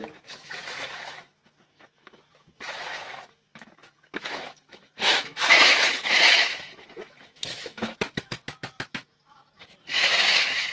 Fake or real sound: fake